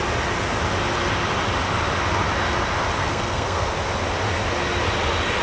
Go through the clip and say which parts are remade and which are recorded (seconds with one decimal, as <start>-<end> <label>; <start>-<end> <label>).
0.0-3.0 recorded; 3.0-3.7 remade; 3.7-5.4 recorded